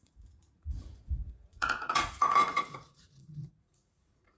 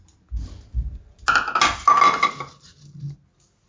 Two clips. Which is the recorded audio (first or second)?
second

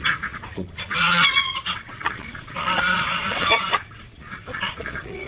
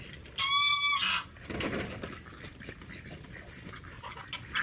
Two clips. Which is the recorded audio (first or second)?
second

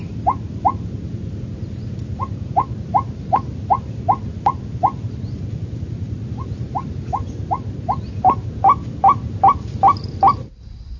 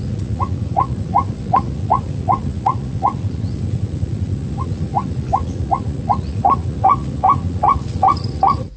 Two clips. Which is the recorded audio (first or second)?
first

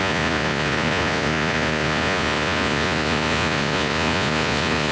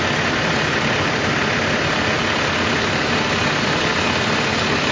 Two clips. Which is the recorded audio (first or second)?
second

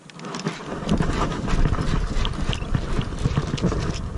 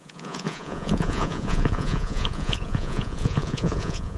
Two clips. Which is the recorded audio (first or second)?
first